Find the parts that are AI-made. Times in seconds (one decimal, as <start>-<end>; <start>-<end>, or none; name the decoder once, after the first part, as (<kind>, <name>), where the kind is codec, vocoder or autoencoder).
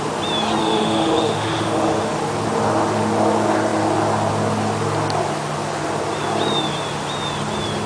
0.6-2.1 (autoencoder, DAC-VAE)